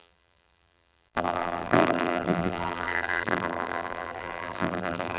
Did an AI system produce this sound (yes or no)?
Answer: yes